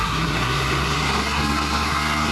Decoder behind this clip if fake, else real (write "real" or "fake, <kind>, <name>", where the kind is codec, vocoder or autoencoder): fake, codec, SNAC